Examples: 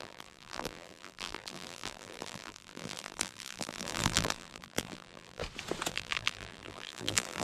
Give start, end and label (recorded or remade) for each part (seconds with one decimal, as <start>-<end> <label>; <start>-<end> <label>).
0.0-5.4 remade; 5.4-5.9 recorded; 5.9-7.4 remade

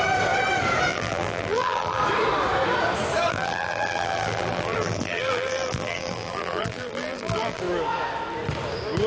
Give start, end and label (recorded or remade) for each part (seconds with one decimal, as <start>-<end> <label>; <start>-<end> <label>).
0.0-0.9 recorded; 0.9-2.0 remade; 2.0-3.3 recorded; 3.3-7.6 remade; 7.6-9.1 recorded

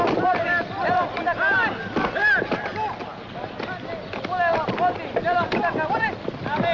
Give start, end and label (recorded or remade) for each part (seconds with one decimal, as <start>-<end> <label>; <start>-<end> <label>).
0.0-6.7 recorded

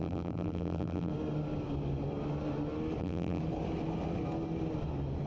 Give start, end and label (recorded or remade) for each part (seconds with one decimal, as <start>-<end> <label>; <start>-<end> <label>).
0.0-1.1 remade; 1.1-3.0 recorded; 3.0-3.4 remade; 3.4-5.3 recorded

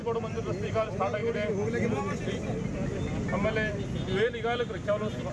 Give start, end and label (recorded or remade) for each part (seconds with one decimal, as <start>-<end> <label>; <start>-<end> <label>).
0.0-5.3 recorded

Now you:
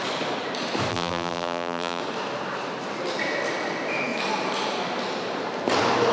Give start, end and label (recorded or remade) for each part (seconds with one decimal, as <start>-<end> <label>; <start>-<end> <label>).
0.0-0.9 recorded; 0.9-2.0 remade; 2.0-6.1 recorded

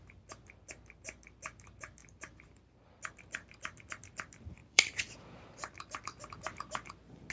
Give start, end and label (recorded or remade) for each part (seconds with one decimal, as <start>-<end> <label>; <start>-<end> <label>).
0.0-2.0 recorded; 2.0-2.9 remade; 2.9-4.6 recorded; 4.6-6.3 remade; 6.3-7.3 recorded